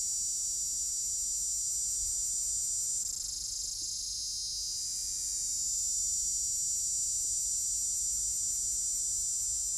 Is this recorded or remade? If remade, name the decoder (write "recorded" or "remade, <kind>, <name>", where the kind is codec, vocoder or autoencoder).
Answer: recorded